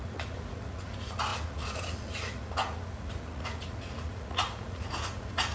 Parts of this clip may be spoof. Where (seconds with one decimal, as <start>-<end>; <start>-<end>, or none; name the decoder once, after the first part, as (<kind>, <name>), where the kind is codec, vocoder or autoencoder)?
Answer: 0.0-5.5 (vocoder, Vocos)